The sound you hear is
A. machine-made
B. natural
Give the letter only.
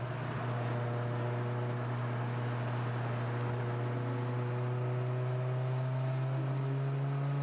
B